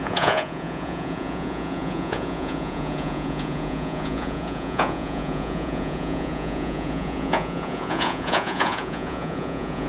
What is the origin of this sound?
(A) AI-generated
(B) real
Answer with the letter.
A